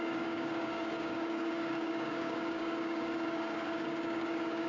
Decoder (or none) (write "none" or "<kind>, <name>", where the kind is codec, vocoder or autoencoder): codec, DAC